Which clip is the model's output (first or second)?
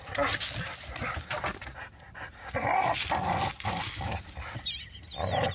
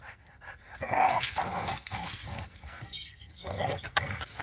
second